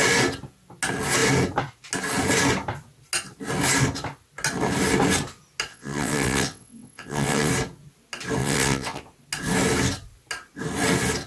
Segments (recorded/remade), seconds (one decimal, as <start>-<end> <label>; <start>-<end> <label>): 0.0-5.7 recorded; 5.7-7.5 remade; 7.5-8.4 recorded; 8.4-9.0 remade; 9.0-11.3 recorded